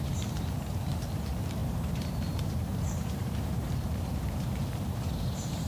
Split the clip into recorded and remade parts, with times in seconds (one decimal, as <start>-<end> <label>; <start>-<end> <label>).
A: 0.0-5.7 remade